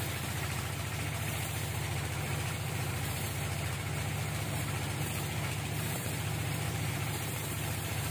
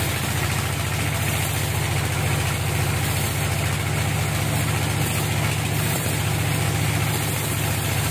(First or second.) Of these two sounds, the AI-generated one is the first